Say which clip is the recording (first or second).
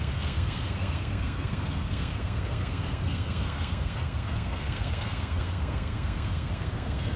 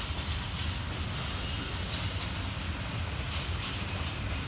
second